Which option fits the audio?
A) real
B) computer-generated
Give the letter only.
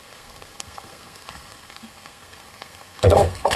B